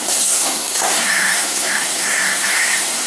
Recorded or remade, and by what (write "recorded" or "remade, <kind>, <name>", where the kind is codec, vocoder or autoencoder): remade, codec, SNAC